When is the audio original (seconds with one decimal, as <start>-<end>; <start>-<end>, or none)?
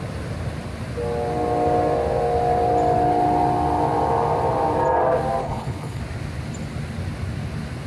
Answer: 0.0-5.4; 6.0-7.9